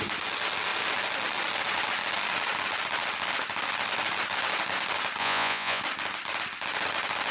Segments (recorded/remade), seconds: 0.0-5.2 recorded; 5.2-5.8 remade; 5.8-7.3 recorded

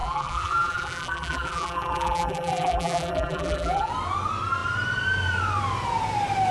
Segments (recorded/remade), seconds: 0.0-3.9 remade; 3.9-6.5 recorded